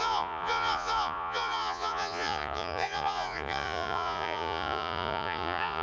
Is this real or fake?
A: fake